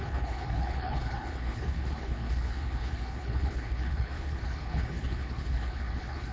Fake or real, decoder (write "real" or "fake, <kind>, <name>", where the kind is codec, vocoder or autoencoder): fake, codec, HILCodec